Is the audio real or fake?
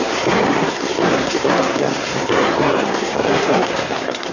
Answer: fake